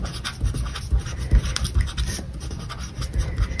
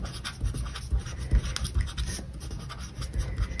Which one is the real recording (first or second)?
second